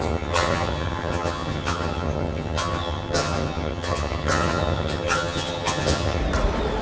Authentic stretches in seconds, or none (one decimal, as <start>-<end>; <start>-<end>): 6.2-6.8